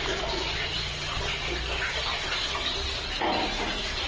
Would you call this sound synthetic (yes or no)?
no